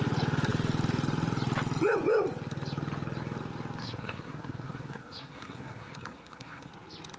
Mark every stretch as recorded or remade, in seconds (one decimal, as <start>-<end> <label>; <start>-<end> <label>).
0.0-3.8 recorded; 3.8-6.7 remade; 6.7-7.2 recorded